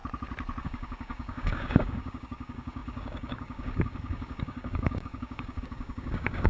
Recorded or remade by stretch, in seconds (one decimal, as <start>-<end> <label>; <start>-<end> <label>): 0.0-0.6 recorded; 0.6-6.5 remade